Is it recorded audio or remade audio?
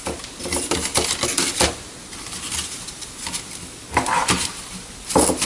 recorded